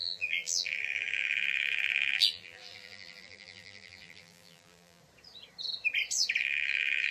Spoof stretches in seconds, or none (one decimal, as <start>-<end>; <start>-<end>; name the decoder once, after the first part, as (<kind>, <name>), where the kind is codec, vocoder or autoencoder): 0.0-5.0 (vocoder, BigVGAN v2); 6.4-7.1